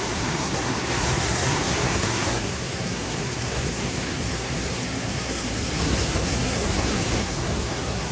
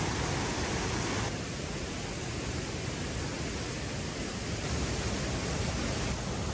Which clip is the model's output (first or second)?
first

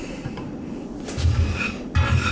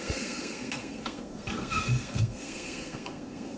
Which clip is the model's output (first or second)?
second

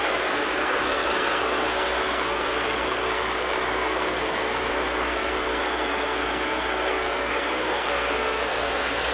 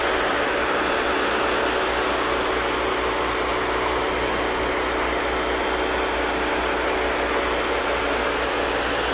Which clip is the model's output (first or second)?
first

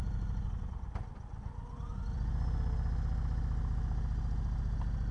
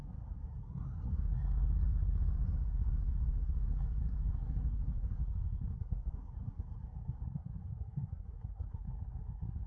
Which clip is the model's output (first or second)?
second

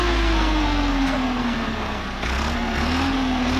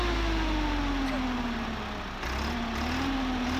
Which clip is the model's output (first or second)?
first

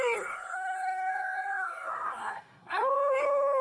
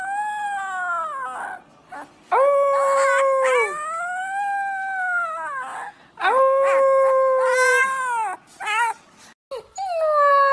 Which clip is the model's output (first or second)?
first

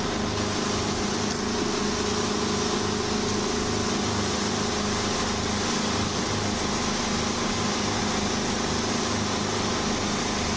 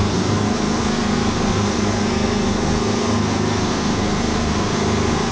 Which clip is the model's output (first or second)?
second